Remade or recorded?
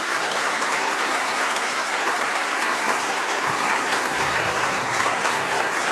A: remade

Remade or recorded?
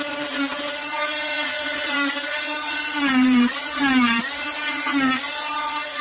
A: remade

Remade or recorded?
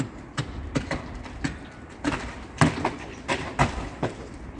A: recorded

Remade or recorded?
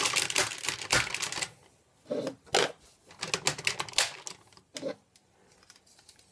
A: recorded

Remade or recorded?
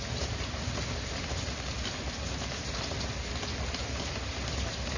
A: recorded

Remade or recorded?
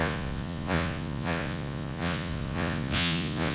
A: remade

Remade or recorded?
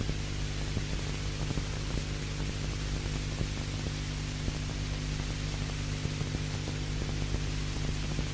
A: recorded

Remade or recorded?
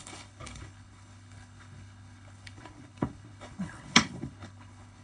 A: remade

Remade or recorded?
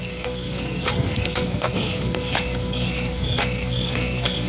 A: remade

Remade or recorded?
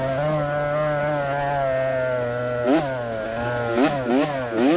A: recorded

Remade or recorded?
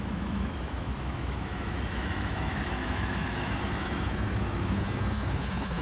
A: remade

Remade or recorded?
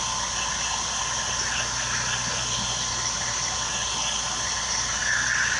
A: recorded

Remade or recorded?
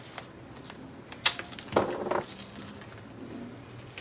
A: recorded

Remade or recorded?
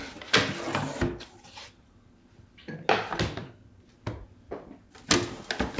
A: recorded